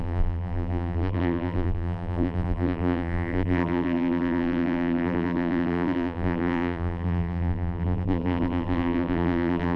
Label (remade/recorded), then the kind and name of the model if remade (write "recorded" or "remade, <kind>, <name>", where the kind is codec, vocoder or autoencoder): remade, vocoder, BigVGAN v2